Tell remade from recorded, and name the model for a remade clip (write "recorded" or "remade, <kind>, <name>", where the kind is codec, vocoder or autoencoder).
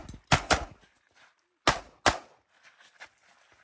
recorded